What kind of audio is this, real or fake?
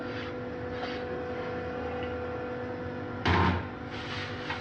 real